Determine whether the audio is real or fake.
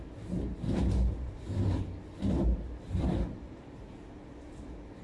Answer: real